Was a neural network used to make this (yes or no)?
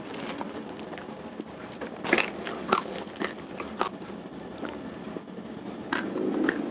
no